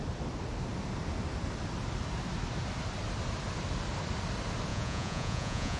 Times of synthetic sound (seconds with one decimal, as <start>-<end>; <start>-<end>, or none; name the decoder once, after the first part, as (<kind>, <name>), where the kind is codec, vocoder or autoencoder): 4.7-5.8 (vocoder, Vocos)